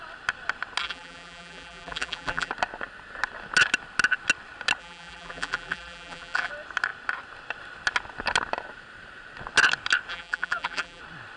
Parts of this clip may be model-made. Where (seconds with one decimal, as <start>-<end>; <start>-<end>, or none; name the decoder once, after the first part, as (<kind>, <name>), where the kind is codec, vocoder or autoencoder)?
0.8-2.5 (vocoder, BigVGAN v2); 4.8-6.5; 10.1-11.0